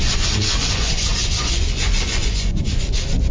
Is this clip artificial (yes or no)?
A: yes